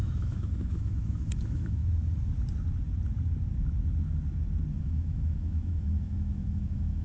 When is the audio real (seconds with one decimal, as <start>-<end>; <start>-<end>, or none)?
1.8-4.7